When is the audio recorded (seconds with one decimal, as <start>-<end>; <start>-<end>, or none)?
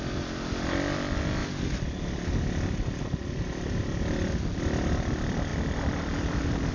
0.0-5.5